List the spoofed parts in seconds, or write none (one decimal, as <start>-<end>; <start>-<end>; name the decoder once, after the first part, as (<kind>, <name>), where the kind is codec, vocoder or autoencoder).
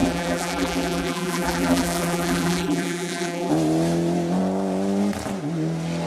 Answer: 0.0-3.5 (vocoder, BigVGAN v2)